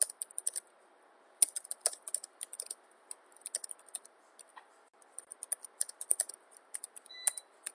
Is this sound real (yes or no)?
yes